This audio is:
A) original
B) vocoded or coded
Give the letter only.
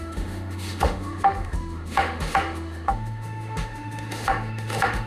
B